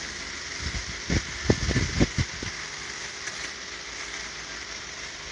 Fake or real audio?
real